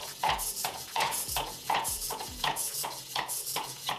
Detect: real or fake fake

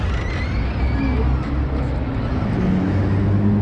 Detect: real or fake real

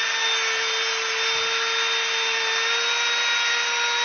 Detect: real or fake real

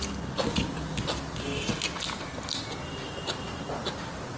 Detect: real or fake real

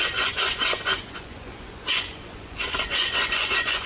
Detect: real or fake fake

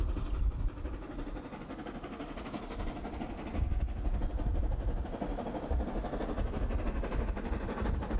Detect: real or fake real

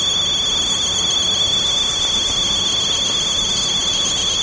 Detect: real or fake real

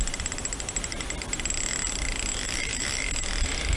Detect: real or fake real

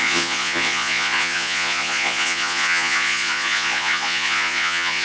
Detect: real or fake fake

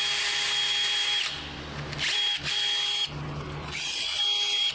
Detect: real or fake real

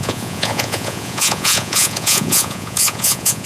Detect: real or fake fake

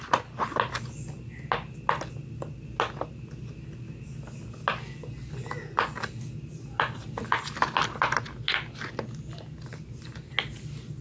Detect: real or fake real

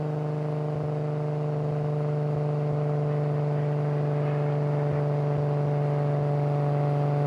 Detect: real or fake real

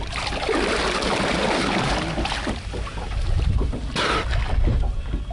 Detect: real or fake real